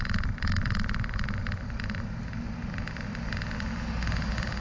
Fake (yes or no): no